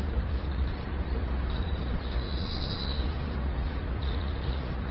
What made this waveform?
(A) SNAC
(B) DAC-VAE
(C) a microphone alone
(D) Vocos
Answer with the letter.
D